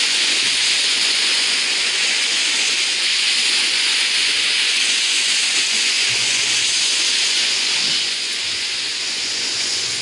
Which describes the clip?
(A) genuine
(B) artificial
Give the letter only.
B